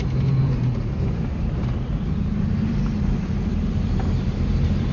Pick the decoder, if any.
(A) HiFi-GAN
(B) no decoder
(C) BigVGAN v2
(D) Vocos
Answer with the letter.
C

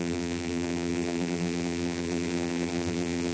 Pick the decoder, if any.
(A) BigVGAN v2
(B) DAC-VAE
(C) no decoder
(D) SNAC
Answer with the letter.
A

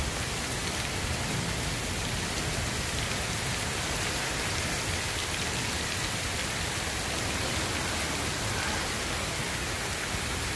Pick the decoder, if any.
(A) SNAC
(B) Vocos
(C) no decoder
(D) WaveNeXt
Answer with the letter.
C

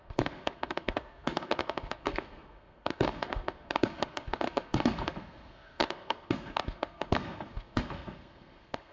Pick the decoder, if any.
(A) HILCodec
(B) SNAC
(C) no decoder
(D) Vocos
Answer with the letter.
B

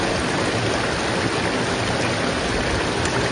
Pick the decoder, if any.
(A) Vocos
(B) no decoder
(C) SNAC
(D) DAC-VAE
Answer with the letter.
B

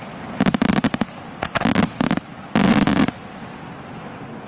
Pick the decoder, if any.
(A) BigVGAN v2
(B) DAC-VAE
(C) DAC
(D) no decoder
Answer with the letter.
D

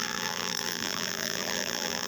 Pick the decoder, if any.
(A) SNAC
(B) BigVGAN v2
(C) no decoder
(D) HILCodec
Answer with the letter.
B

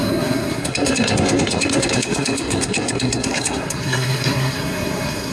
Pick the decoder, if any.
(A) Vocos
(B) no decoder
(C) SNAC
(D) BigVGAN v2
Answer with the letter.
C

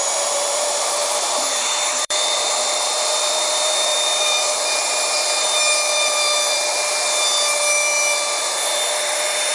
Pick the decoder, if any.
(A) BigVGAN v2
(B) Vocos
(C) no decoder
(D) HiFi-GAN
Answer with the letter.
A